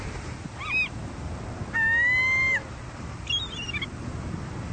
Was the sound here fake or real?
real